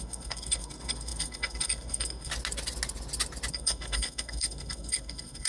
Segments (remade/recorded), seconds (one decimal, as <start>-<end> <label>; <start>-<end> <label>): 0.0-2.3 remade; 2.3-3.5 recorded; 3.5-5.5 remade